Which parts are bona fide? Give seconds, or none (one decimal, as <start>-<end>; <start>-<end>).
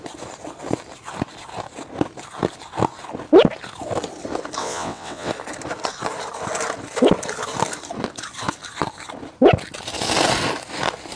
0.0-4.6; 5.3-11.2